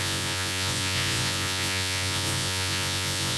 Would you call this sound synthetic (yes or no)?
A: yes